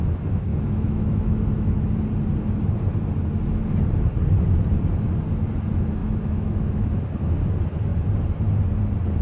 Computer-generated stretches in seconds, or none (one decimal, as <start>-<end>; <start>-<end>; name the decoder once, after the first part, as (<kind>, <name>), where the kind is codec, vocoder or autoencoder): 0.5-1.9 (autoencoder, DAC-VAE); 6.0-7.0